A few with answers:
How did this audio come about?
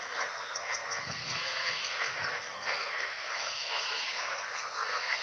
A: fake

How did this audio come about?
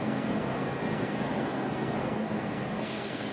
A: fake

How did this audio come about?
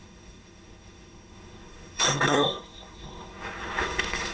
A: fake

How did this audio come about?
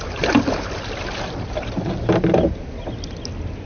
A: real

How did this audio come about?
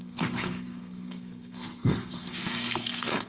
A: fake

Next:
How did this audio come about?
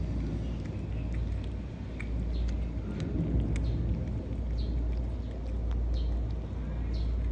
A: real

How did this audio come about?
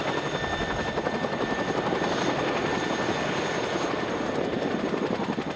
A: real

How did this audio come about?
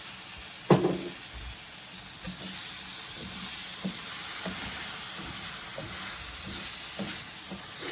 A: real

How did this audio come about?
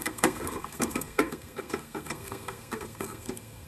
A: fake